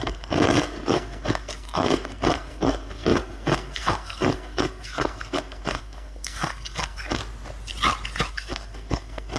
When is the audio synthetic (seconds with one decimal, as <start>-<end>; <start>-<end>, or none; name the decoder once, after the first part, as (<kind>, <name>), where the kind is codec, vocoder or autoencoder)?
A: 0.0-7.2 (codec, SNAC); 8.3-9.4